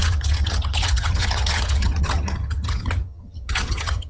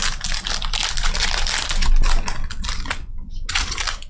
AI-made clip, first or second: first